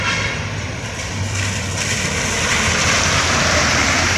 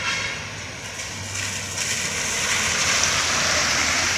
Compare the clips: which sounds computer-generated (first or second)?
first